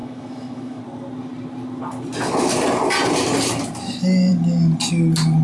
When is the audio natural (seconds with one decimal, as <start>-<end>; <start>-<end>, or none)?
0.8-5.4

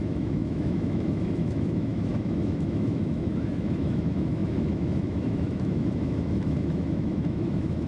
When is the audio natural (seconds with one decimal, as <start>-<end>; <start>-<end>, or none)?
none

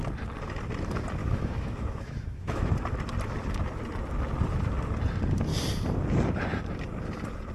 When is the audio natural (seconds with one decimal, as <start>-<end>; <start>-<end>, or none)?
0.0-1.2; 2.7-7.5

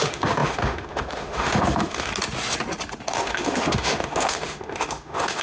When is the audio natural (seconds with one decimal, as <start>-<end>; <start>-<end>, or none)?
2.1-3.1

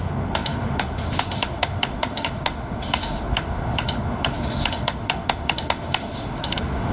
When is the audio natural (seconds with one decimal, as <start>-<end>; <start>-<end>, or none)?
none